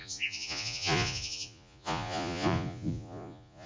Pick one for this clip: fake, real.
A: fake